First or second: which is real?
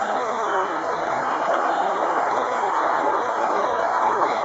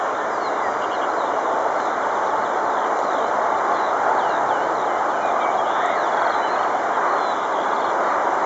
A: second